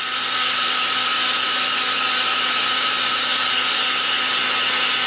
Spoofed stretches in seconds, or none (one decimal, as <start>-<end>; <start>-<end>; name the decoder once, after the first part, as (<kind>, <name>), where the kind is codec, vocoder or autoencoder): none

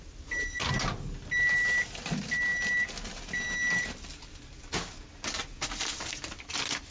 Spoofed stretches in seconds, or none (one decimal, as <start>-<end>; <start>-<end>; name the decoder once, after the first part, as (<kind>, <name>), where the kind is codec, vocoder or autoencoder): none

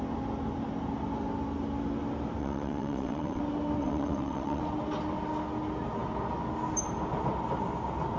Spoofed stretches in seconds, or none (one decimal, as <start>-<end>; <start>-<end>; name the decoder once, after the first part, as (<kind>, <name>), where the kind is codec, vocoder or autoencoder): 2.4-3.4 (vocoder, WaveNeXt); 3.8-4.6

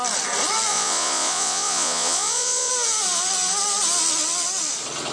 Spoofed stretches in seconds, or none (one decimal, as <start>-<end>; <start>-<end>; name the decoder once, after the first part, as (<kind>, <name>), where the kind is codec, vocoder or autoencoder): 0.7-2.7 (vocoder, Vocos)

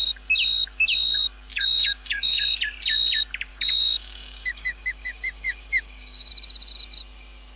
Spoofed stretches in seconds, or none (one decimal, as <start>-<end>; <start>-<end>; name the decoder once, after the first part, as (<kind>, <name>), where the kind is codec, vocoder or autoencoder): 1.5-2.4 (codec, DAC); 3.5-6.3

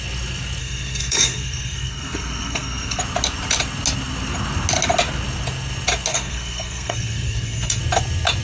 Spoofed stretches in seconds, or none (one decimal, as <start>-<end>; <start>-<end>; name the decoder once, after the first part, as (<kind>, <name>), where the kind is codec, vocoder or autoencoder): 0.6-3.0 (codec, SNAC); 6.1-7.8

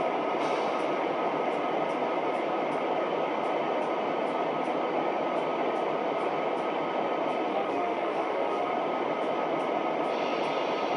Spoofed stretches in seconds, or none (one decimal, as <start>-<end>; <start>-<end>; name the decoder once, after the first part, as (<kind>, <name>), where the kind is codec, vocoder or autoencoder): 7.5-8.7 (autoencoder, DAC-VAE)

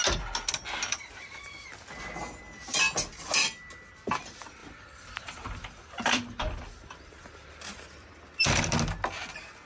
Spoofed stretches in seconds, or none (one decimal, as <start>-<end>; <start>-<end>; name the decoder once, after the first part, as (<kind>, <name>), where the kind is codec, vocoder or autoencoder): 4.6-8.2 (vocoder, BigVGAN v2)